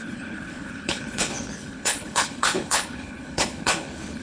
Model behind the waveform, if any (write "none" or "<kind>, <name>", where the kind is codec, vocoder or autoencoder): codec, HILCodec